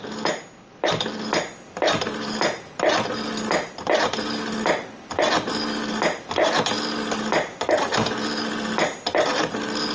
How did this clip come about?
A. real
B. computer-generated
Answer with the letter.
A